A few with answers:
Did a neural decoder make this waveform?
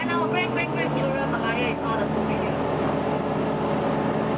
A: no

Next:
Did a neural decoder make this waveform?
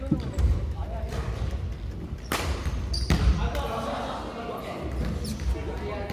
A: no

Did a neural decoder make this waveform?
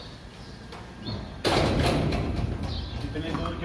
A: no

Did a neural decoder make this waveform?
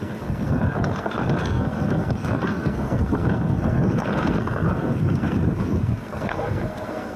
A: yes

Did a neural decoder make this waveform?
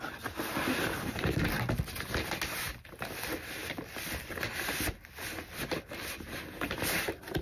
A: no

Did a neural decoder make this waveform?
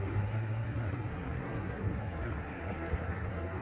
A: yes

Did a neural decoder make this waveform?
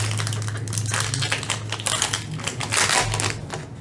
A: no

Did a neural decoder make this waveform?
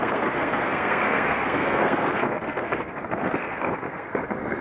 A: yes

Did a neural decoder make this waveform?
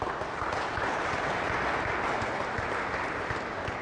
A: no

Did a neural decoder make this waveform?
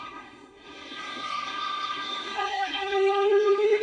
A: yes